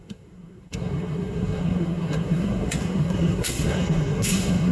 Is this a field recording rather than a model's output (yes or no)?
no